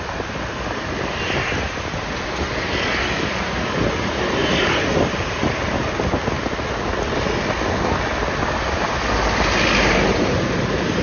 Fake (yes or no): no